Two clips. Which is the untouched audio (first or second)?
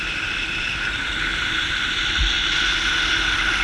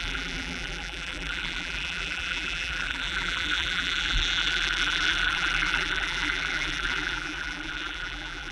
first